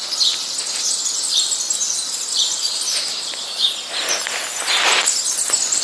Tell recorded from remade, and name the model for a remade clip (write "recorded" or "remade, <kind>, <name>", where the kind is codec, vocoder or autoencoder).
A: recorded